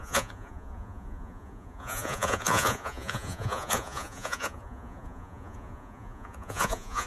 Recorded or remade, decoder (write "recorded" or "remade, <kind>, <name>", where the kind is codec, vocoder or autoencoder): remade, vocoder, Vocos